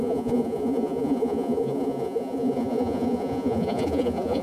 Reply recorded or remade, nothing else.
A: remade